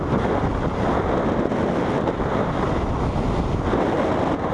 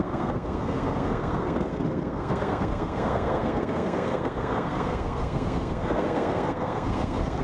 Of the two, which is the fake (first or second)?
second